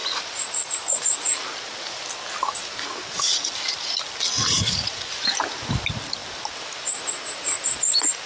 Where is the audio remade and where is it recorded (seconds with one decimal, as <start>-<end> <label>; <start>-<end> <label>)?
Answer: 0.0-8.3 recorded